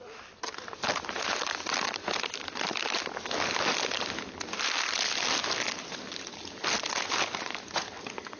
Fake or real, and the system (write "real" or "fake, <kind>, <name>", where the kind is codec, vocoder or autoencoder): real